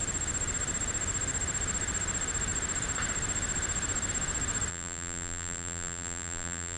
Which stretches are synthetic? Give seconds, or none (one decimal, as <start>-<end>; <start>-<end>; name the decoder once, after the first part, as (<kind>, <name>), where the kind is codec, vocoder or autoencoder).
4.7-6.8 (vocoder, BigVGAN v2)